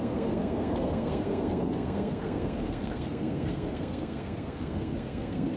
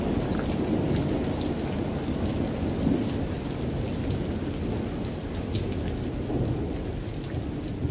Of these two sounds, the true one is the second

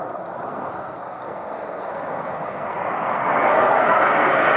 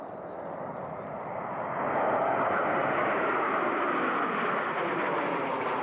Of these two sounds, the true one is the second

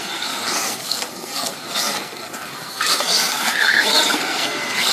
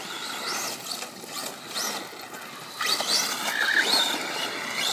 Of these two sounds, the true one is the second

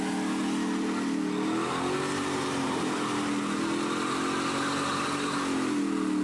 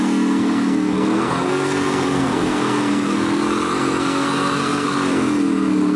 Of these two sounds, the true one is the first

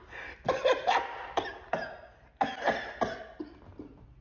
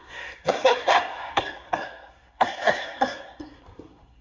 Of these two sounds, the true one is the first